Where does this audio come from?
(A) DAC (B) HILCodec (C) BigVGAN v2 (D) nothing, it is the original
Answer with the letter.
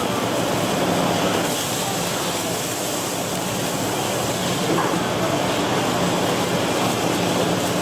D